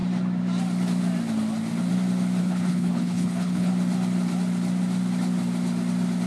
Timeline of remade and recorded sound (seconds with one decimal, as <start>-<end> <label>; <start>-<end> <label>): 0.0-2.4 recorded; 2.4-3.7 remade; 3.7-6.3 recorded